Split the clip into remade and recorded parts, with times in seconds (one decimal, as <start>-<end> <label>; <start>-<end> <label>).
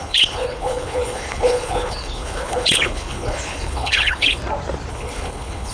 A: 0.0-4.4 remade; 4.4-4.9 recorded; 4.9-5.7 remade